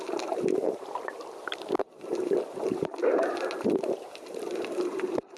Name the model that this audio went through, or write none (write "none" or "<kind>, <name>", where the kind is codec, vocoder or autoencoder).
vocoder, BigVGAN v2